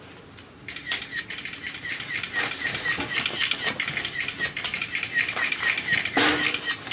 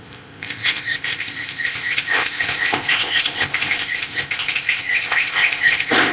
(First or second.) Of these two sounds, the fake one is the second